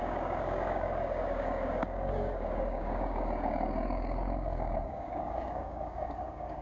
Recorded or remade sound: remade